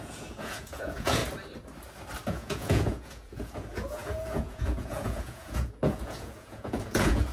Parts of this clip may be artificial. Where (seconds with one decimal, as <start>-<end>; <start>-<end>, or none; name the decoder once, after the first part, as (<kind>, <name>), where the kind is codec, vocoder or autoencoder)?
0.0-1.2 (vocoder, Vocos); 2.3-7.3